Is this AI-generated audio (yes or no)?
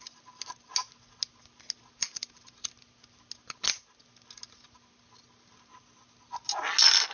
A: no